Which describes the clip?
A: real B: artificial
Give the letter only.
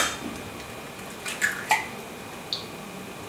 A